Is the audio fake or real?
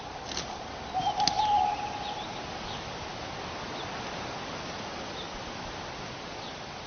real